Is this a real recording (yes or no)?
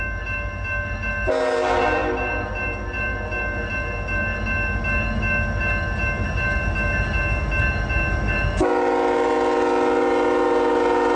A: yes